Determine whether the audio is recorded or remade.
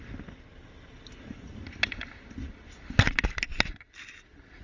recorded